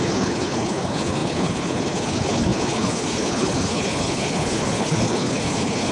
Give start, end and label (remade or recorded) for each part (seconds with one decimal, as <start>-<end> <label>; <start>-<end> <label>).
0.0-5.9 remade